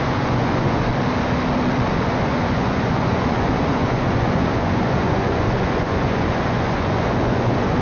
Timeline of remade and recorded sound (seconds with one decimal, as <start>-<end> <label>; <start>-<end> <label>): 0.0-0.9 remade; 0.9-1.9 recorded; 1.9-7.8 remade